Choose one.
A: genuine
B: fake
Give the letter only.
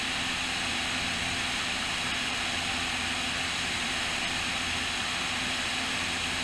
A